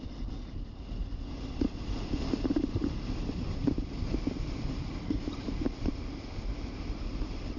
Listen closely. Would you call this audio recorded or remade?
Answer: recorded